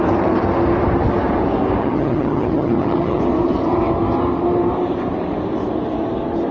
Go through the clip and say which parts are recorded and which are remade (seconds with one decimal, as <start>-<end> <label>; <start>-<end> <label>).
0.0-1.8 recorded; 1.8-3.2 remade; 3.2-6.5 recorded

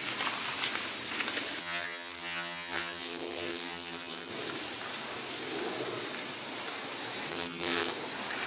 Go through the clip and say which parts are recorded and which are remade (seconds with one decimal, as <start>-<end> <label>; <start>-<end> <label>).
0.0-1.6 recorded; 1.6-4.3 remade; 4.3-7.3 recorded; 7.3-7.9 remade; 7.9-8.5 recorded

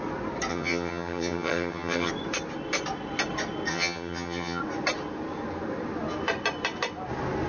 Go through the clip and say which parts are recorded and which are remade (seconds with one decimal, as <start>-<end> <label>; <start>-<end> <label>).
0.0-0.5 recorded; 0.5-2.1 remade; 2.1-3.7 recorded; 3.7-4.6 remade; 4.6-7.5 recorded

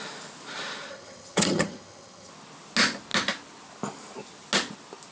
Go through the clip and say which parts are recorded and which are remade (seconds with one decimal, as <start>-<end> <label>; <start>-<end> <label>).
0.0-0.9 recorded; 0.9-2.3 remade; 2.3-5.1 recorded

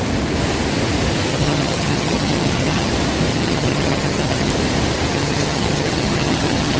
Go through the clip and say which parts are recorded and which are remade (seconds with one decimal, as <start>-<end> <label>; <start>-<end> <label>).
0.0-1.3 recorded; 1.3-2.9 remade; 2.9-3.3 recorded; 3.3-4.5 remade; 4.5-5.1 recorded; 5.1-6.8 remade

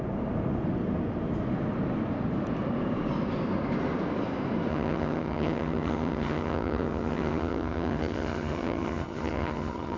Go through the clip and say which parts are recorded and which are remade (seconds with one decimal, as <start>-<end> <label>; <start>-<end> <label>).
0.0-4.7 recorded; 4.7-10.0 remade

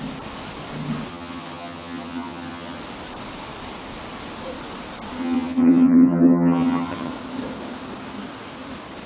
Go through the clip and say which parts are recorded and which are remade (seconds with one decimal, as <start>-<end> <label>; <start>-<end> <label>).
0.0-1.1 recorded; 1.1-2.8 remade; 2.8-5.2 recorded; 5.2-7.1 remade; 7.1-9.1 recorded